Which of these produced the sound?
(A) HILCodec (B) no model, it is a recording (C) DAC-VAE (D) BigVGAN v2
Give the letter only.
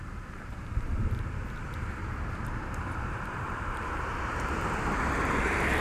D